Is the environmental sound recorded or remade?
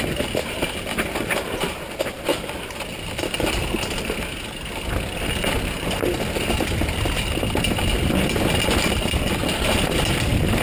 recorded